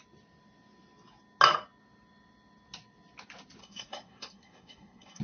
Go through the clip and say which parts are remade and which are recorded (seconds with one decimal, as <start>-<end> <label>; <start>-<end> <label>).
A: 0.0-3.6 recorded; 3.6-5.2 remade